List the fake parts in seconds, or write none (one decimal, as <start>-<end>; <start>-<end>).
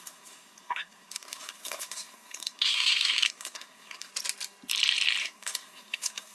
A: 0.0-4.1; 5.2-6.3